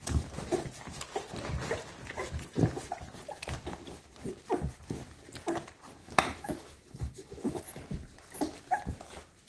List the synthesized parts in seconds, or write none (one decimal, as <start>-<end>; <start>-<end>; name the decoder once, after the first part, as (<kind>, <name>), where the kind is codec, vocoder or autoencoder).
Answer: 6.0-7.6 (autoencoder, DAC-VAE)